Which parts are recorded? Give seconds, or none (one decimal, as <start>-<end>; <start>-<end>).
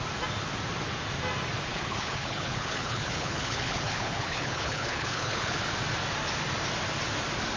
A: 0.0-1.7; 5.6-7.6